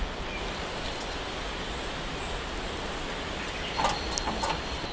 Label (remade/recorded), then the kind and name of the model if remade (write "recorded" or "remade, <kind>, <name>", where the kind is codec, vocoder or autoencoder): recorded